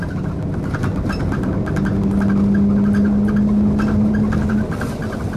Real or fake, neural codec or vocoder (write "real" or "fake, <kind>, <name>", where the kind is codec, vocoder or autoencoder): real